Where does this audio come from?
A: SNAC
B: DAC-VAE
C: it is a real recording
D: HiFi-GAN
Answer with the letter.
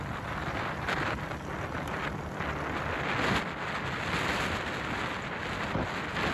C